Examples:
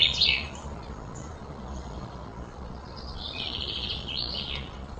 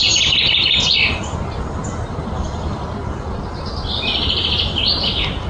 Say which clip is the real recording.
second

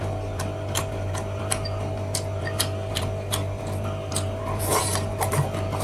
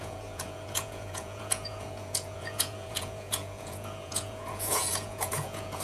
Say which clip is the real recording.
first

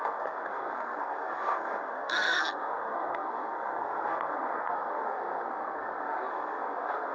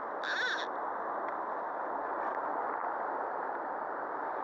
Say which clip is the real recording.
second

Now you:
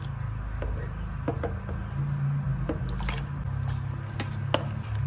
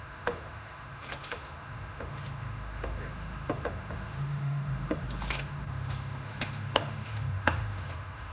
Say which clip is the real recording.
first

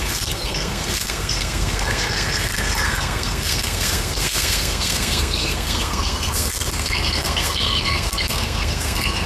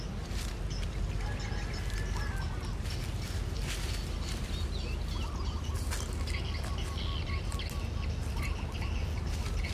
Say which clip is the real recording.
second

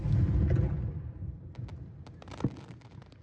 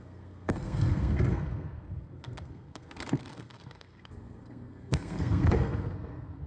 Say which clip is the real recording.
first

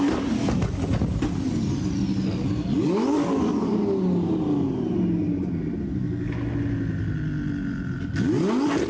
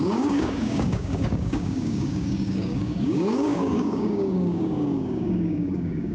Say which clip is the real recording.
first